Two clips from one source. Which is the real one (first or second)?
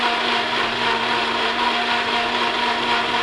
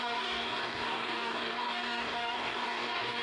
first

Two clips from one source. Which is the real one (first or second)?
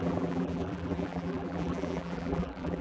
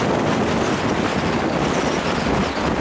second